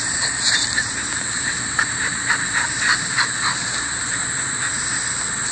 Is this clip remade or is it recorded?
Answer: remade